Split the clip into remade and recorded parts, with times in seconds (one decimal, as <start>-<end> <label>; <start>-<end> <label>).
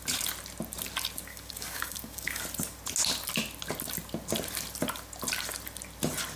0.0-1.3 recorded; 1.3-2.4 remade; 2.4-6.4 recorded